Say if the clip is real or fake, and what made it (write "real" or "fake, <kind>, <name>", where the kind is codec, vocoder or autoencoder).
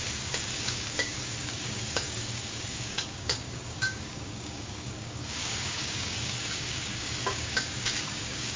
fake, codec, DAC